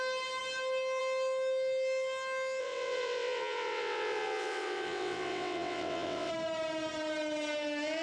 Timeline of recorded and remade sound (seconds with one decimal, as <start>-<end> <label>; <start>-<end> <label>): 0.0-2.6 recorded; 2.6-6.3 remade; 6.3-8.0 recorded